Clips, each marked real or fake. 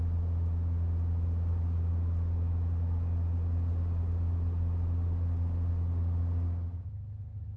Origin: real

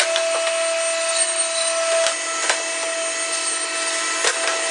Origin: real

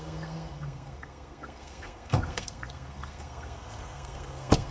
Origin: fake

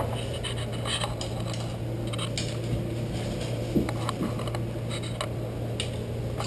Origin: real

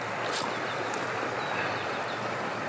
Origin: real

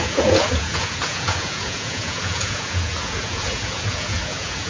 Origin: fake